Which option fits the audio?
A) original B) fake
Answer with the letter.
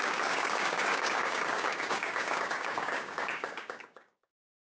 B